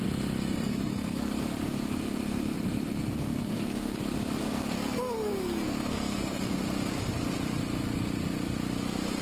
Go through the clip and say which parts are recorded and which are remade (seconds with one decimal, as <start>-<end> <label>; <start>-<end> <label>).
0.0-0.7 recorded; 0.7-1.3 remade; 1.3-3.0 recorded; 3.0-4.0 remade; 4.0-4.4 recorded; 4.4-6.5 remade; 6.5-9.2 recorded